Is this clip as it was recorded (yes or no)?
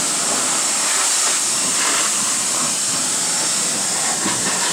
yes